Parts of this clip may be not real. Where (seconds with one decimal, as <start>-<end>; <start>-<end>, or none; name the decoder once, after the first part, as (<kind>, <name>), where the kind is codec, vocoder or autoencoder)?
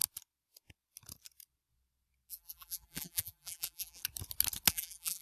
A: 2.3-4.0 (vocoder, BigVGAN v2); 4.7-5.2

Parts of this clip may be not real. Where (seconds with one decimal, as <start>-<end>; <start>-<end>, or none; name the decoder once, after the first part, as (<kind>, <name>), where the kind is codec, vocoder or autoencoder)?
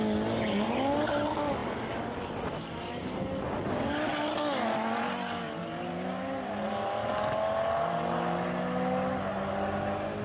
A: none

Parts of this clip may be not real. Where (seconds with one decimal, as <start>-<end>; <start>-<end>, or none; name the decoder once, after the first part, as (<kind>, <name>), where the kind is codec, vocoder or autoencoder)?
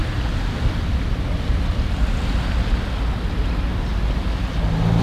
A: none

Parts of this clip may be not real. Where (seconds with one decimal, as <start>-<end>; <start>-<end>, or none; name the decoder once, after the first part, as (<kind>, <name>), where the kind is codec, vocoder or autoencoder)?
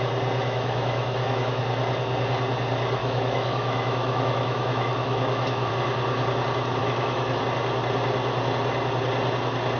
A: 0.4-1.6 (autoencoder, DAC-VAE); 3.0-5.7; 6.8-7.4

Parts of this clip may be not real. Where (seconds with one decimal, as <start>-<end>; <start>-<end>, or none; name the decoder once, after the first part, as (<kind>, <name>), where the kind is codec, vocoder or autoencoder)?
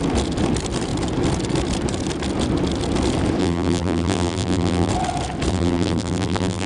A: 3.4-4.9 (vocoder, BigVGAN v2); 5.5-6.7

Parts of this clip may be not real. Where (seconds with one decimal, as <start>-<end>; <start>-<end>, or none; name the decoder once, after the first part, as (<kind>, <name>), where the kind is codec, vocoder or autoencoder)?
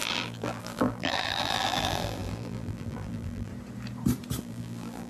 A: 0.0-3.5 (vocoder, BigVGAN v2); 4.4-5.1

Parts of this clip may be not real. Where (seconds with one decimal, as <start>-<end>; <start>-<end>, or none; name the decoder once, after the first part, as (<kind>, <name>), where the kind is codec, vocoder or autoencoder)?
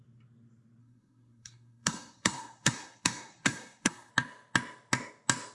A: 0.8-4.1 (codec, SNAC)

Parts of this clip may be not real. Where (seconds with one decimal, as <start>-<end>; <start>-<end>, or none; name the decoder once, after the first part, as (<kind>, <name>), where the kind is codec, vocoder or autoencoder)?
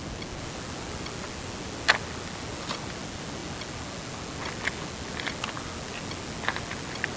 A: none